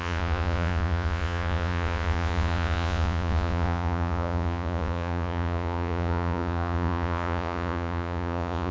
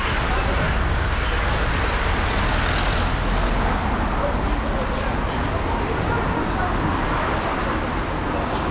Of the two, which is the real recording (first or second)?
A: second